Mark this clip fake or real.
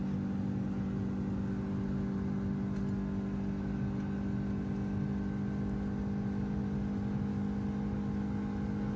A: real